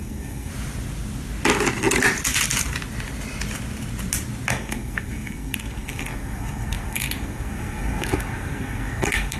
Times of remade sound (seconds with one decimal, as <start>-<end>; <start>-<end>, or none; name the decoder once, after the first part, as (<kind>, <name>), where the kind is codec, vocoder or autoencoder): 0.0-0.5 (codec, SNAC); 4.5-9.4

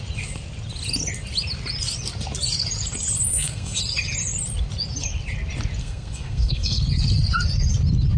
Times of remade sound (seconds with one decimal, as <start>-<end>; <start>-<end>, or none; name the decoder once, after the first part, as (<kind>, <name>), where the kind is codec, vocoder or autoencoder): 3.3-3.8 (codec, SNAC); 5.8-6.8

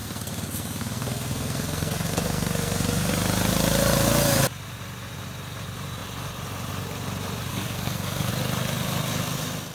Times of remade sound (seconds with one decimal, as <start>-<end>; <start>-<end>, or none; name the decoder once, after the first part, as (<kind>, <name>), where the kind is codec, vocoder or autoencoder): 0.0-3.1 (codec, SNAC); 7.5-8.3

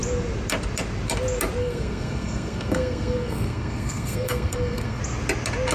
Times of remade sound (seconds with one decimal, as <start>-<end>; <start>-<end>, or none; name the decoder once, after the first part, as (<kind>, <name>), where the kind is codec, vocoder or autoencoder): 1.6-5.0 (codec, SNAC)

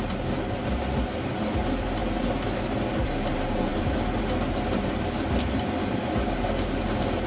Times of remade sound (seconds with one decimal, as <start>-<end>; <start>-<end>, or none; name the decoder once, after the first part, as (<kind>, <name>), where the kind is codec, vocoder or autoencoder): none

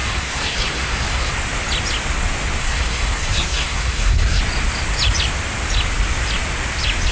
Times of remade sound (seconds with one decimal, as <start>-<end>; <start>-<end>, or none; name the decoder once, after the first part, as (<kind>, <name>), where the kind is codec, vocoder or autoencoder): 0.0-1.3 (codec, SNAC); 2.6-4.4

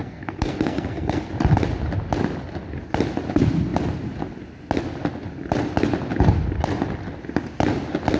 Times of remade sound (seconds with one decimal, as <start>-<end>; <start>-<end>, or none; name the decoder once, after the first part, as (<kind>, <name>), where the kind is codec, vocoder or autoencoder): 0.0-1.3 (codec, SNAC)